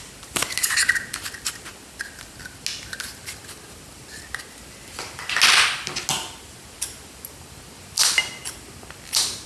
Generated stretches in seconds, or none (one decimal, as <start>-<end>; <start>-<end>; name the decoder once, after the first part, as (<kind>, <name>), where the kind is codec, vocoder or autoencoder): none